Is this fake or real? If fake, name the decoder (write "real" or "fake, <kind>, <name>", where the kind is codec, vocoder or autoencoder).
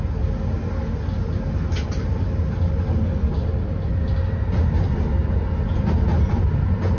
real